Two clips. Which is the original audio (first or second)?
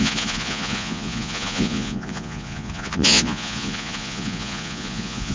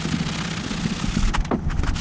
second